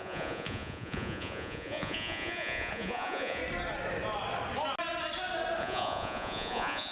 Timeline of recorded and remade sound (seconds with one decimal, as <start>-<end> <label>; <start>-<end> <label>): 0.0-3.4 remade; 3.4-5.6 recorded; 5.6-6.9 remade